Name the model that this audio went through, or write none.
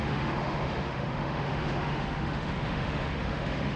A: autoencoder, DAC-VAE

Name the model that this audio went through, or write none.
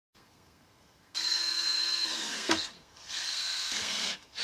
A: codec, SNAC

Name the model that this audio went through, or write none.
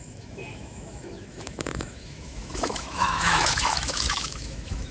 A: autoencoder, DAC-VAE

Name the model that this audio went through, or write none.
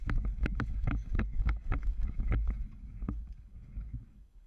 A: codec, DAC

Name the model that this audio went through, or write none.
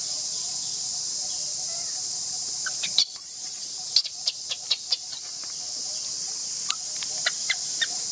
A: vocoder, BigVGAN v2